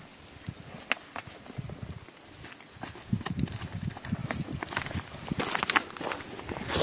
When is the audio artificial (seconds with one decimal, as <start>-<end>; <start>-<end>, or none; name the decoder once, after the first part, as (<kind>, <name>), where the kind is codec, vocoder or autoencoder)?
none